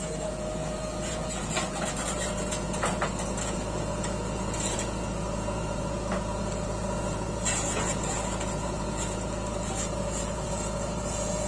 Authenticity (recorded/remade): remade